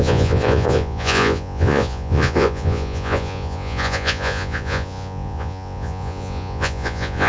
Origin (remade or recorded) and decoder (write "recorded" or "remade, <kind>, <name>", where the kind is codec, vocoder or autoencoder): remade, vocoder, Vocos